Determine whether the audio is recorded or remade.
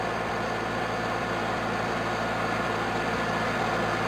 recorded